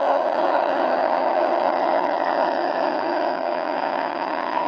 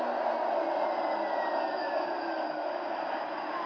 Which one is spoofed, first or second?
first